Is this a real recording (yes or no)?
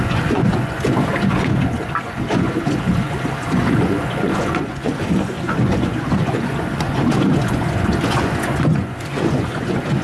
no